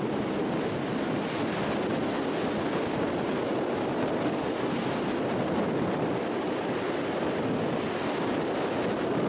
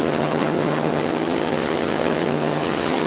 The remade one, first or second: second